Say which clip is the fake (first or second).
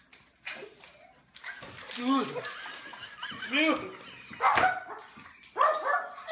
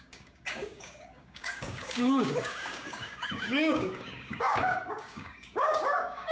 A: second